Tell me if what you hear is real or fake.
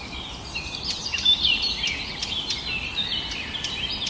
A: real